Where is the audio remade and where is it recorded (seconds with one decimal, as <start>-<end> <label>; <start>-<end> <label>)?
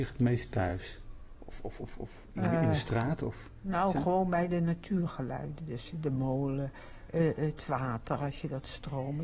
0.0-9.2 recorded